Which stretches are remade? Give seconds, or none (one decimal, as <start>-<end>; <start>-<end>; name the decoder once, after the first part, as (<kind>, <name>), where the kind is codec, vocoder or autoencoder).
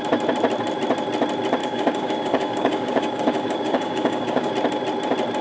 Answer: 1.6-4.5 (codec, DAC)